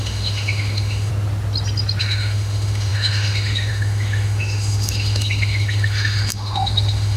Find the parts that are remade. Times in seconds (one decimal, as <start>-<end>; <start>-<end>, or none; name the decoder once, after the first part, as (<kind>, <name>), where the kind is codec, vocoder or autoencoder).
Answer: 0.0-1.1 (autoencoder, DAC-VAE); 2.0-7.2